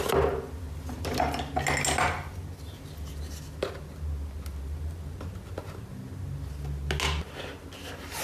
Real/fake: real